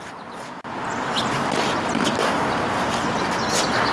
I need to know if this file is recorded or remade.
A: recorded